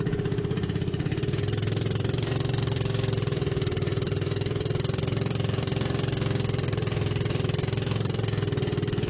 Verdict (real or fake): fake